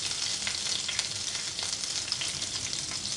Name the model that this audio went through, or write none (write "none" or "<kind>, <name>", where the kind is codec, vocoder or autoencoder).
none